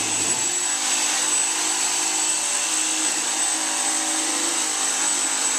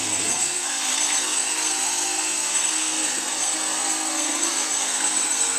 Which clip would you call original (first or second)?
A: first